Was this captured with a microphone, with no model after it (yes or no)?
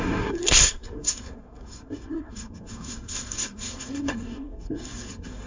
no